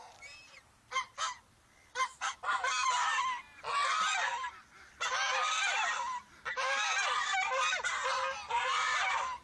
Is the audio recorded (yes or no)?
yes